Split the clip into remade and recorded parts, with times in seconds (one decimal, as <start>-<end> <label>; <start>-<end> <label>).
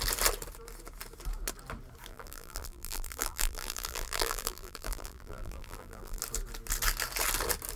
0.0-2.1 recorded; 2.1-6.2 remade; 6.2-7.8 recorded